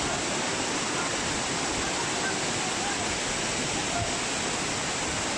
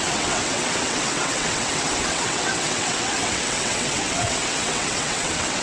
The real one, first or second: first